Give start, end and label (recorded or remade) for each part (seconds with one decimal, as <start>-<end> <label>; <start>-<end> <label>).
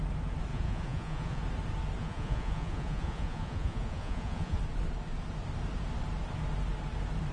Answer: 0.0-0.5 recorded; 0.5-1.4 remade; 1.4-2.0 recorded; 2.0-4.6 remade; 4.6-7.3 recorded